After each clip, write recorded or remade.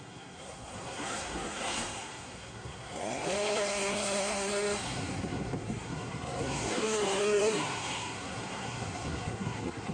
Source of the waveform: remade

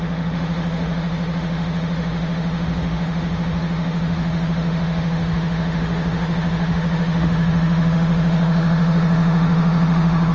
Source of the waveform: remade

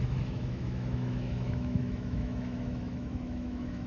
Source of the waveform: remade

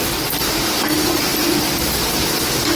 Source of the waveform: recorded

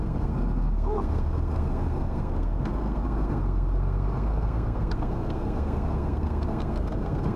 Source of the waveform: remade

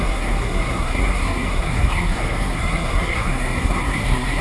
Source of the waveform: remade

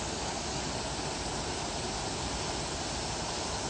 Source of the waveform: recorded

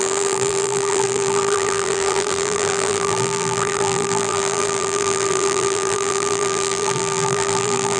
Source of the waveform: remade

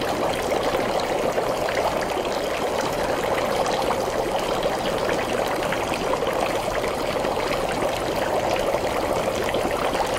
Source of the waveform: recorded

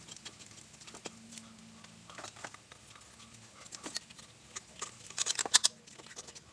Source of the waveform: recorded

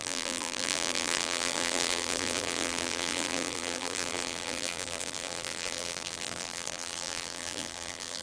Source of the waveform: remade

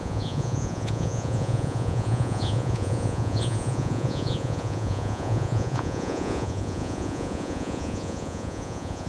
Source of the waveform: remade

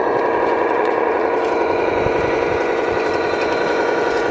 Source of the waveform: remade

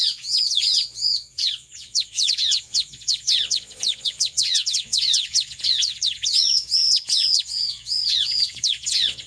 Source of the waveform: remade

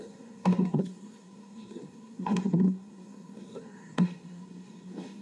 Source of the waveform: remade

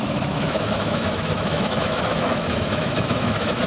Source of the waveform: remade